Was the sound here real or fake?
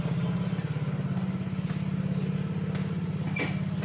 real